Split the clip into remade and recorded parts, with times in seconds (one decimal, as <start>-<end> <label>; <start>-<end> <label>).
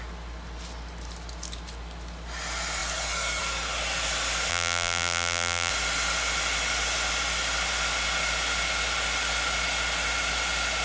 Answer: 0.0-4.5 recorded; 4.5-5.7 remade; 5.7-10.8 recorded